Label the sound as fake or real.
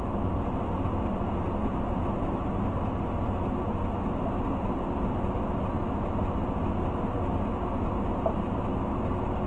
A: real